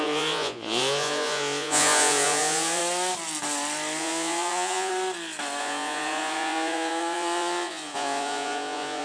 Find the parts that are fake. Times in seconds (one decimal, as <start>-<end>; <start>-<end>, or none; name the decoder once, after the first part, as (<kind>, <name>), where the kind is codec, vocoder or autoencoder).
0.0-2.8 (vocoder, Vocos); 4.0-4.9; 5.6-9.0